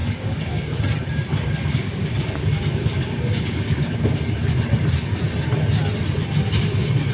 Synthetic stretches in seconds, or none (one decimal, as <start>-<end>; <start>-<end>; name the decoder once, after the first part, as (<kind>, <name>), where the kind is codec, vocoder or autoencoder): 0.0-0.8 (codec, DAC); 1.6-4.2